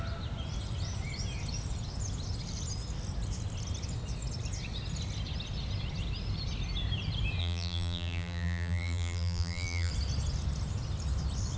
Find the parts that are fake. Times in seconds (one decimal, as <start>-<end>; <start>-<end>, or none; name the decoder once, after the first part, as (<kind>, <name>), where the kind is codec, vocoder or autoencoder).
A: 7.4-9.9 (vocoder, BigVGAN v2)